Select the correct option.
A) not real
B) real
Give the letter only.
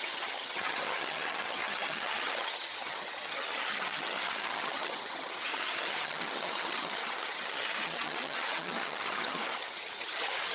A